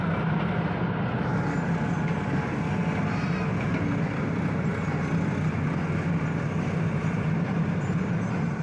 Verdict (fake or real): real